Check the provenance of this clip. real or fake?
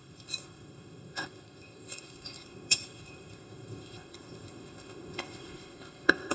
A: fake